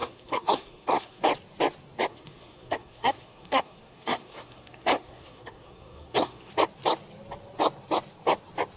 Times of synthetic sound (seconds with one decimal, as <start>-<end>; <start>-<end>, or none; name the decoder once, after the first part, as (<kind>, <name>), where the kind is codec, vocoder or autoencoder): 0.0-1.2 (codec, SNAC); 2.1-6.5